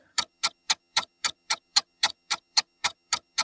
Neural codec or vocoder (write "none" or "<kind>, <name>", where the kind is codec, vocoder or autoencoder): vocoder, HiFi-GAN